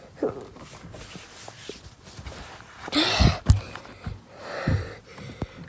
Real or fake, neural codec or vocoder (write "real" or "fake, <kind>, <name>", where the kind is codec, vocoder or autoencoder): real